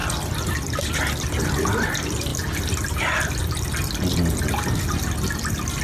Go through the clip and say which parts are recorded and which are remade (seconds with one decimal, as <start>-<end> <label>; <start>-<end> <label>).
0.0-5.8 recorded